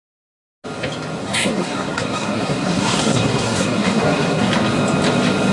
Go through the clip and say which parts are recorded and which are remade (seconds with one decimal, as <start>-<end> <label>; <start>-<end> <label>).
0.0-1.2 recorded; 1.2-4.5 remade; 4.5-5.5 recorded